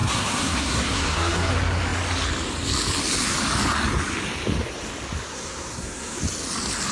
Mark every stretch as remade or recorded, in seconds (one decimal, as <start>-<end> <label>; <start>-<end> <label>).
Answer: 0.0-1.5 remade; 1.5-5.3 recorded; 5.3-6.2 remade; 6.2-6.9 recorded